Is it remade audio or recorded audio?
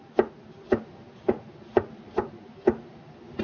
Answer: recorded